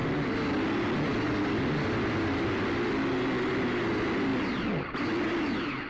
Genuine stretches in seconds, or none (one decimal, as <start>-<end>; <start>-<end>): 0.0-5.9